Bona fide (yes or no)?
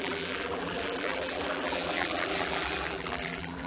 no